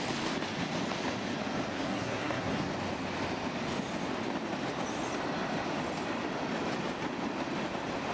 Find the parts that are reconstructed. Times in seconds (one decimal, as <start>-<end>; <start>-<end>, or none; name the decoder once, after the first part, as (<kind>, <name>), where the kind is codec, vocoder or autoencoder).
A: 1.7-2.7 (codec, SNAC)